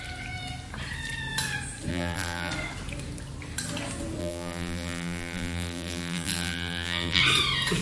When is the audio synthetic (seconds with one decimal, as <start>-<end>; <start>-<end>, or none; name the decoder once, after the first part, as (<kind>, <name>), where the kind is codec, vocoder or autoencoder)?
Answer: 1.9-2.5 (vocoder, BigVGAN v2); 4.2-7.2